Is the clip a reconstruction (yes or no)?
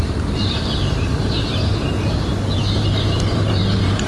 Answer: yes